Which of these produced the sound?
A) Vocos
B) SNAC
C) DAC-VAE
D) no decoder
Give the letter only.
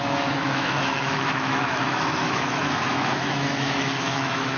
C